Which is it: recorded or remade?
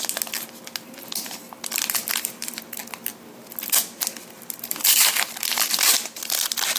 recorded